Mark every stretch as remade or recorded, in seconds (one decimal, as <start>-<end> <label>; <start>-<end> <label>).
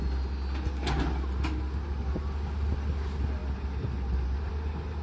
0.0-5.0 recorded